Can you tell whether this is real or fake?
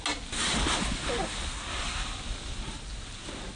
real